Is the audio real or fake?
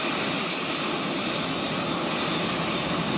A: real